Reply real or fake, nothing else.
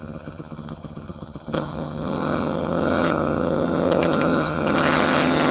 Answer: fake